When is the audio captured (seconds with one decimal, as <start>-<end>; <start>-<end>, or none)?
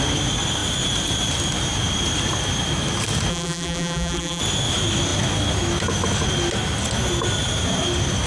0.0-3.3; 4.4-8.3